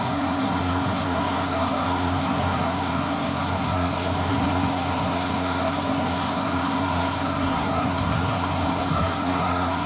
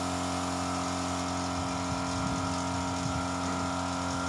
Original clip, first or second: second